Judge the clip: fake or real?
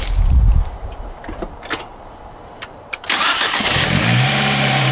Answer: fake